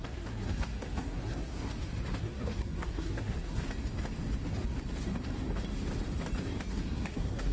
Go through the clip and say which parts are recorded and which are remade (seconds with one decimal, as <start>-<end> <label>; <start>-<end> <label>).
0.0-1.5 remade; 1.5-2.2 recorded; 2.2-3.6 remade; 3.6-6.7 recorded; 6.7-7.5 remade